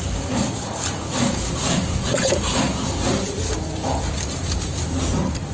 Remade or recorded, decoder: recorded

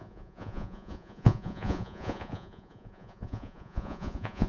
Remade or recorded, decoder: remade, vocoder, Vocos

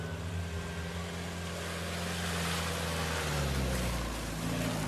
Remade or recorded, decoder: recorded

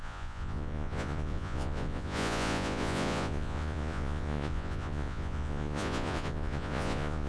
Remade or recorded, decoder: remade, vocoder, Vocos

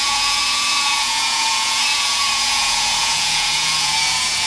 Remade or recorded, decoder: remade, vocoder, Vocos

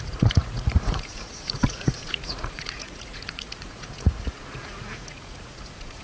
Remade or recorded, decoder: remade, vocoder, Vocos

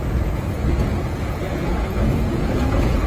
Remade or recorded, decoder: remade, vocoder, Vocos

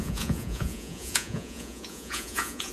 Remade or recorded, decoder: remade, vocoder, Vocos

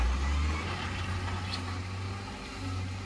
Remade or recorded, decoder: recorded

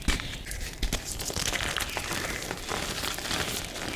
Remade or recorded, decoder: recorded